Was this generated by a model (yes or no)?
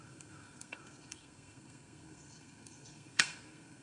yes